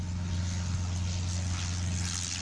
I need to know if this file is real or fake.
real